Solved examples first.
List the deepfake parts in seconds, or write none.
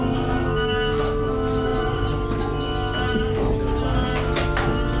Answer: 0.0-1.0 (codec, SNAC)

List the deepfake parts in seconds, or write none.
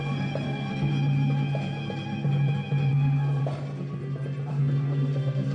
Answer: 0.0-0.9 (codec, SNAC); 2.9-3.4; 4.5-5.5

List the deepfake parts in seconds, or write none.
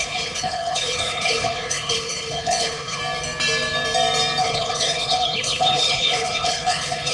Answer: 0.0-3.0 (codec, HILCodec); 4.4-7.1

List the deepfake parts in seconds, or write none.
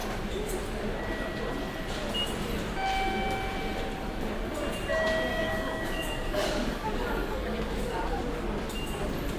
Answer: 5.3-8.2 (codec, DAC)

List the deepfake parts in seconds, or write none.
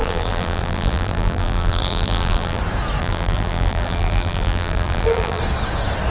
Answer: 0.0-2.6 (vocoder, BigVGAN v2); 3.0-5.4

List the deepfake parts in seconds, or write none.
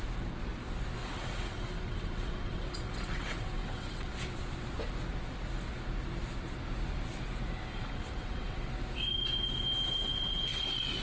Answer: 1.0-4.1 (vocoder, WaveNeXt); 7.7-8.7; 10.0-11.0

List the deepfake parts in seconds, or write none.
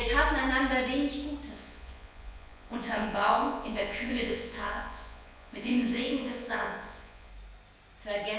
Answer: 1.5-7.3 (vocoder, Vocos)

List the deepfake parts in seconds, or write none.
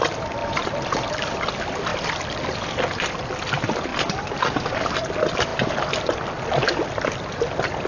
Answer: 0.4-1.5 (vocoder, BigVGAN v2); 1.9-3.5